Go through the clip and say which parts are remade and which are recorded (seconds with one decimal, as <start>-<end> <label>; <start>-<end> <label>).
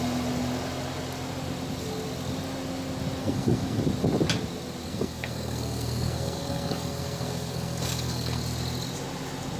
0.0-3.2 recorded; 3.2-3.8 remade; 3.8-4.9 recorded; 4.9-8.4 remade; 8.4-9.6 recorded